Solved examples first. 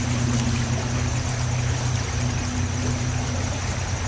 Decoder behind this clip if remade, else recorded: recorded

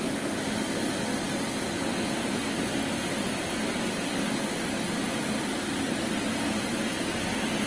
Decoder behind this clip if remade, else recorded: recorded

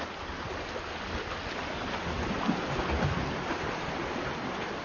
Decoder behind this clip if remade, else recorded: recorded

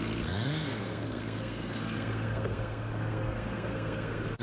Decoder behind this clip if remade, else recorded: remade, codec, SNAC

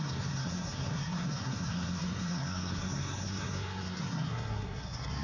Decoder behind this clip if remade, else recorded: remade, codec, SNAC